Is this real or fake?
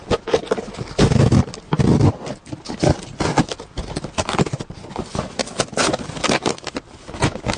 fake